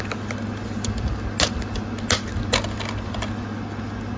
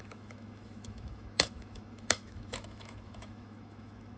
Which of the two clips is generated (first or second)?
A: second